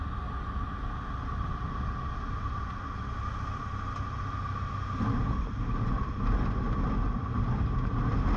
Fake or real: real